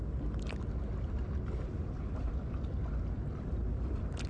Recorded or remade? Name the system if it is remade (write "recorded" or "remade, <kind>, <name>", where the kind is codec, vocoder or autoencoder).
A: recorded